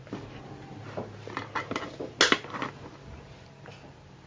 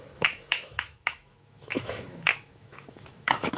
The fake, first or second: second